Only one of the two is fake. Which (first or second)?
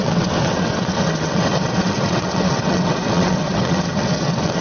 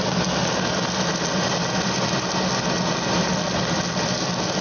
first